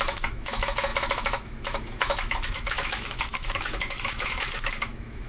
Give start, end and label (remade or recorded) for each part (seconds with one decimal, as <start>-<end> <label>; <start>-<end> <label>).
0.0-5.3 remade